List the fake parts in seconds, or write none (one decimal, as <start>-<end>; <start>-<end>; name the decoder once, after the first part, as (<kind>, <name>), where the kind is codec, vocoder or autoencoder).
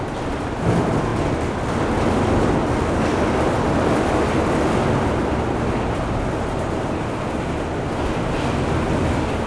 none